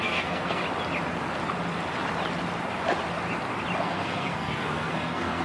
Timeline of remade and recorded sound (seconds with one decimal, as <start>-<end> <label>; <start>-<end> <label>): 0.0-0.6 remade; 0.6-3.8 recorded; 3.8-5.4 remade